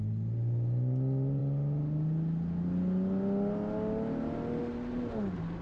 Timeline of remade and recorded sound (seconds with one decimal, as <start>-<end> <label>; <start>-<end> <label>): 0.0-5.6 recorded